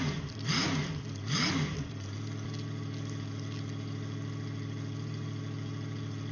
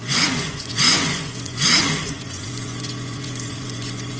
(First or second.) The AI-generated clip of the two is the second